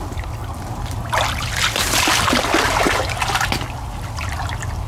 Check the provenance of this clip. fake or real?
real